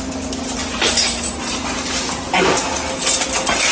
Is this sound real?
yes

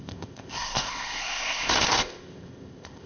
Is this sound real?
no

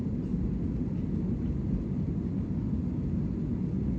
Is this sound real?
yes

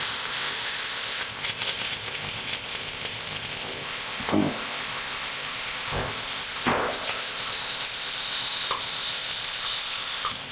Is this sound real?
no